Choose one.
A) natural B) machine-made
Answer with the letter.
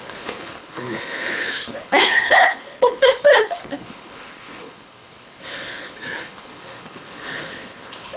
B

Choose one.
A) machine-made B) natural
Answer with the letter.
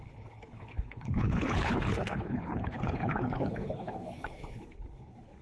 A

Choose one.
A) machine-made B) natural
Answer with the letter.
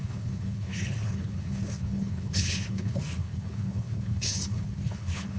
A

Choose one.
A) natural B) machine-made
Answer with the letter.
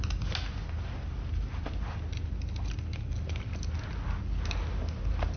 A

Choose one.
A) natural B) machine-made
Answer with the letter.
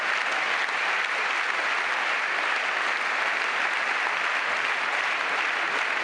A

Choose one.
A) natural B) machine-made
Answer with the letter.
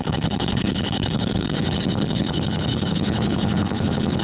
B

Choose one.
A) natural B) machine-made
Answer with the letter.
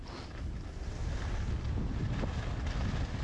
A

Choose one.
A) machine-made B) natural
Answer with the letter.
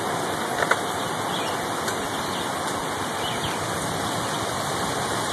B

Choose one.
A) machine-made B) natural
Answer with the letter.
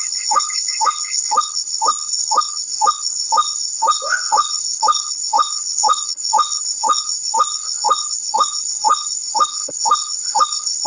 A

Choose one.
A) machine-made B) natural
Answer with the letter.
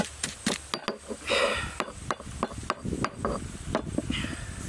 B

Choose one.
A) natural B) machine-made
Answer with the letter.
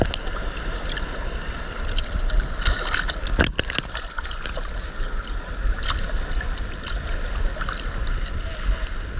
A